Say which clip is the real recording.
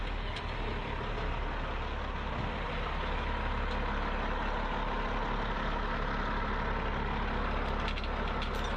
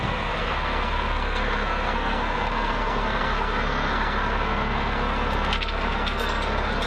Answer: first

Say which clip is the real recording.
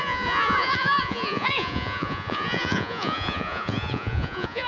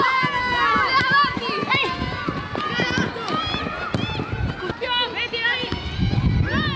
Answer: second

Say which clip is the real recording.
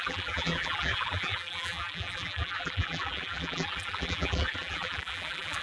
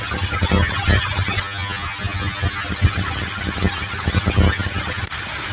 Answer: second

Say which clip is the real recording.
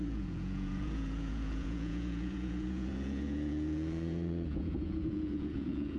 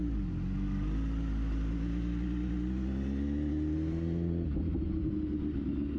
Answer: second